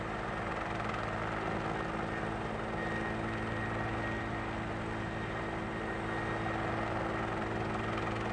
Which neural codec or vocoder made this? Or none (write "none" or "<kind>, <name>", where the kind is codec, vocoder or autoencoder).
none